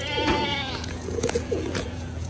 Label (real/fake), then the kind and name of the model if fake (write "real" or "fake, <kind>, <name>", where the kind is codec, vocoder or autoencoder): fake, vocoder, Vocos